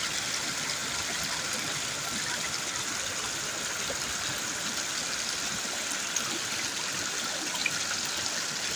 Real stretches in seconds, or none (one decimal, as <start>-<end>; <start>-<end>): 0.0-8.8

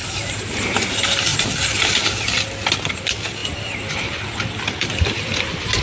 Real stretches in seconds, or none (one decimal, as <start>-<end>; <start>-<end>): 0.6-1.3; 2.0-5.8